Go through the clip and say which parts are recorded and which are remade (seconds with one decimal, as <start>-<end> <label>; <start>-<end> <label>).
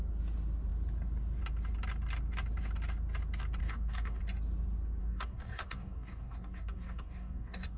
0.0-3.6 recorded; 3.6-4.2 remade; 4.2-5.0 recorded; 5.0-7.8 remade